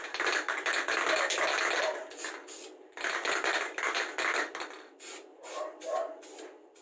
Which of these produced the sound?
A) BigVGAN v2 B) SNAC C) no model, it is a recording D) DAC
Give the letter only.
C